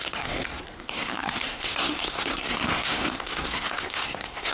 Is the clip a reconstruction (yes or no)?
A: yes